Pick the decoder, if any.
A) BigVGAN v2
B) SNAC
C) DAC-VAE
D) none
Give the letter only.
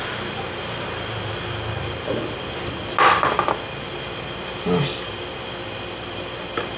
D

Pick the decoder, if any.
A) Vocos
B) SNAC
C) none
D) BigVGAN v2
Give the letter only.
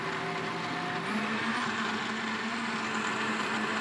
C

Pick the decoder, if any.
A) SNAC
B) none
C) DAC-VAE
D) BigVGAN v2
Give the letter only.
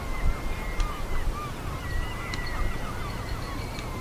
D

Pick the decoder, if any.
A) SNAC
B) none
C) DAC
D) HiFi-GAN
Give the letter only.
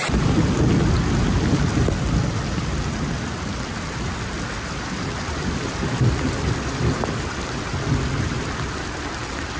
B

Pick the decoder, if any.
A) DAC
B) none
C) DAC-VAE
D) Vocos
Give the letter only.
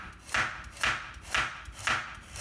B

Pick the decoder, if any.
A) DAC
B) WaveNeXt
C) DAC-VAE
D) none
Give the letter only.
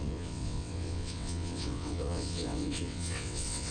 B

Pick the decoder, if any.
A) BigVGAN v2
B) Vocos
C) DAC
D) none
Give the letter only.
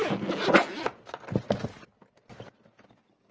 D